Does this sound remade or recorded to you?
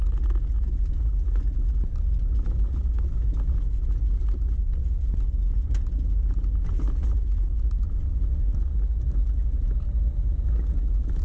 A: recorded